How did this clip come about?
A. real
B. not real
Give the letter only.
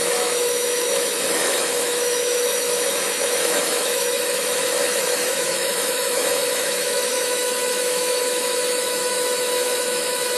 B